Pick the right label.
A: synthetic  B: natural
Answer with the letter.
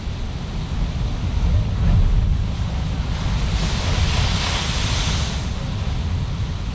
B